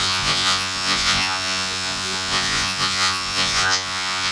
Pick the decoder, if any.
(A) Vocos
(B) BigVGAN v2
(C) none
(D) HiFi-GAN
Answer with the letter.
A